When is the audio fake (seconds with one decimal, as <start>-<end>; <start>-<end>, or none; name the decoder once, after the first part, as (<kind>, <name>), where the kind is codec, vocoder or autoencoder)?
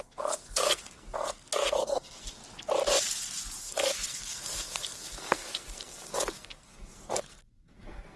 0.0-2.4 (codec, SNAC); 3.6-8.2